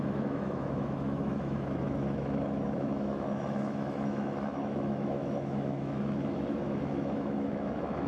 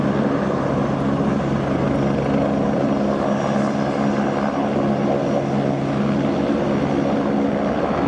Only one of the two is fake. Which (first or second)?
first